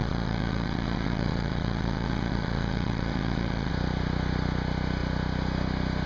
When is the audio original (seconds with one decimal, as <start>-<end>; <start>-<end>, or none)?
3.7-6.1